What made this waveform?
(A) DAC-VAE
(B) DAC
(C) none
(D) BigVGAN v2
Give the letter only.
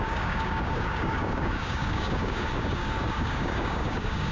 B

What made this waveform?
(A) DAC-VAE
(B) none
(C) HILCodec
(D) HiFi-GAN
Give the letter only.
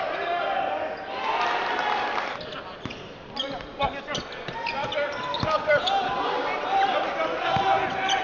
B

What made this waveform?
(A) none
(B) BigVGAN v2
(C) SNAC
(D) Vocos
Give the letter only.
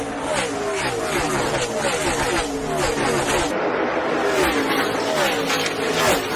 A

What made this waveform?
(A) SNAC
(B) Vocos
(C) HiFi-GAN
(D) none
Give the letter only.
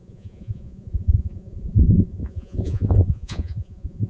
B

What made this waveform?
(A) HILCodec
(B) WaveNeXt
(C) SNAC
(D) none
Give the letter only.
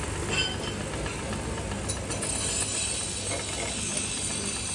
D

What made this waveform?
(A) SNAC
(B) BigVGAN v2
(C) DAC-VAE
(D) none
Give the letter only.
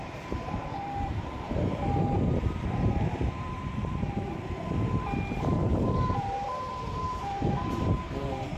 B